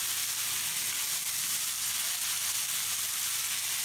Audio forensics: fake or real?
real